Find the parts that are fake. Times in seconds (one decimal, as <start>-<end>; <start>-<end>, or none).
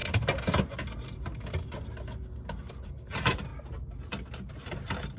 3.1-3.5; 4.5-5.2